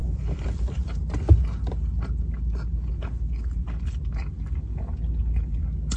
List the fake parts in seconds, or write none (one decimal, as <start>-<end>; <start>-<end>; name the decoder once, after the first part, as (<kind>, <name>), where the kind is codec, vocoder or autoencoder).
0.0-0.8 (vocoder, BigVGAN v2)